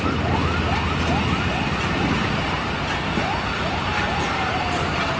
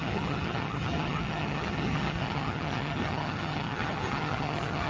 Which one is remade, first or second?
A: second